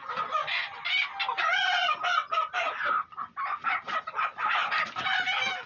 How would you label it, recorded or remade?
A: recorded